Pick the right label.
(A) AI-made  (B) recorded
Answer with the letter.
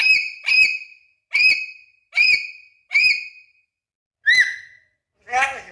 B